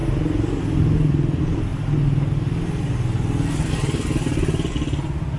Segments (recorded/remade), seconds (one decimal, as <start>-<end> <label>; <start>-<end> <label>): 0.0-5.4 recorded